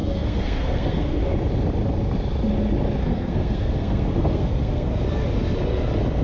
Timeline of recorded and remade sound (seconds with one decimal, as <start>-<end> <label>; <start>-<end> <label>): 0.0-1.2 remade; 1.2-3.0 recorded; 3.0-4.9 remade; 4.9-6.2 recorded